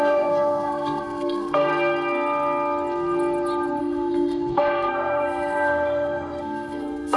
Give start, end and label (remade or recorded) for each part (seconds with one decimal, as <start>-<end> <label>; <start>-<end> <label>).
0.0-1.7 remade; 1.7-3.8 recorded; 3.8-7.2 remade